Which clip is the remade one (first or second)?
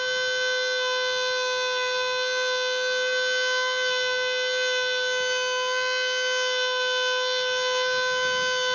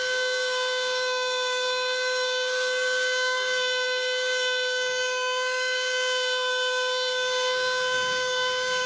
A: second